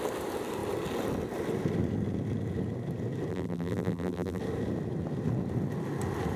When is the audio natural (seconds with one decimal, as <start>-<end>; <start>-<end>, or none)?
0.0-3.3; 4.4-6.4